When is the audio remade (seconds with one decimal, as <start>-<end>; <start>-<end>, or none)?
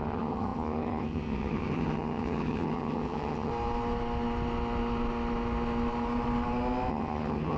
0.0-3.5; 6.9-7.6